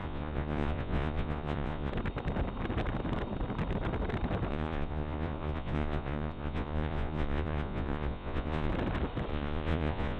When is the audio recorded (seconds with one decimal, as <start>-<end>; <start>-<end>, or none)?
1.9-4.5; 8.7-9.3